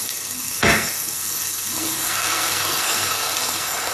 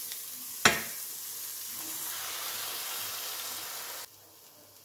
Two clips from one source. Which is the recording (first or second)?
second